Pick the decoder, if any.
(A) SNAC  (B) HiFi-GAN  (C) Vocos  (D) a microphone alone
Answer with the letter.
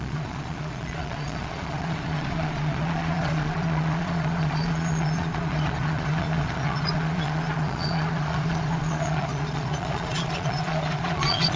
C